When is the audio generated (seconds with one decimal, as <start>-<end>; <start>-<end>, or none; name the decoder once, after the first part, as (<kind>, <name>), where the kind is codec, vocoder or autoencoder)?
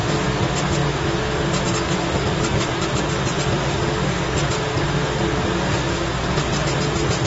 none